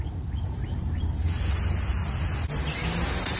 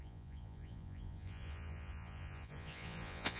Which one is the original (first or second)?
first